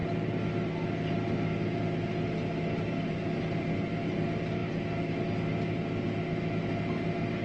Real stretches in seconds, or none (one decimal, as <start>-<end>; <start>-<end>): 0.0-7.4